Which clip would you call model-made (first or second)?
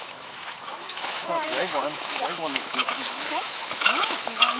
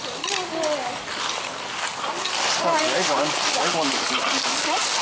first